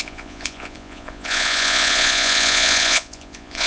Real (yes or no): no